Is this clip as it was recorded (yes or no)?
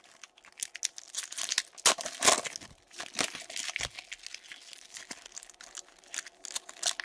yes